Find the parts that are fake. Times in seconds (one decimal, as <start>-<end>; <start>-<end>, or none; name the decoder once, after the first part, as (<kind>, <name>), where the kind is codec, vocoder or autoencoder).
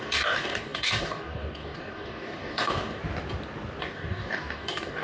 0.0-3.0 (codec, DAC); 3.8-5.0